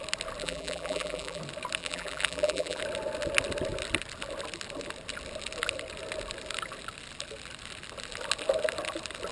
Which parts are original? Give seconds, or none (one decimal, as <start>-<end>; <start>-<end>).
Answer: 0.0-0.4; 1.4-1.8; 2.8-9.3